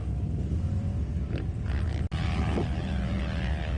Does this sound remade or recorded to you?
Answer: recorded